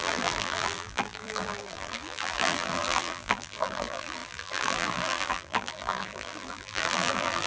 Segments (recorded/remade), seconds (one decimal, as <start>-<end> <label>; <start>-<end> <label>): 0.0-7.5 remade